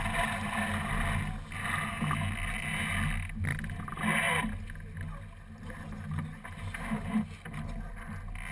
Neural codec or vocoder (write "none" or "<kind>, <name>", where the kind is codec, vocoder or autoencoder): none